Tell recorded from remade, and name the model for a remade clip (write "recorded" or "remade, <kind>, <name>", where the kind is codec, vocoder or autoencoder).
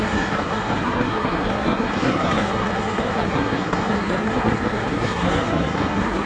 remade, codec, SNAC